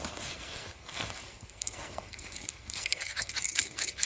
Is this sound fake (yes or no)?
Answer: yes